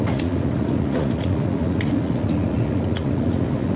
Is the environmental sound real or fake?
fake